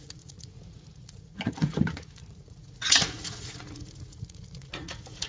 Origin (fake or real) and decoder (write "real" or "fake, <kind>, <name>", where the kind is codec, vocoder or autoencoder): fake, vocoder, Vocos